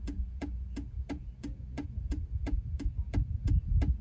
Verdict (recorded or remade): remade